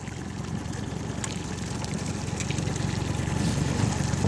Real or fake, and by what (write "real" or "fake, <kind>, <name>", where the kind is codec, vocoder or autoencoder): real